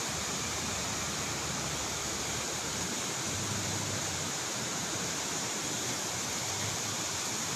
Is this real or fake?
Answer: fake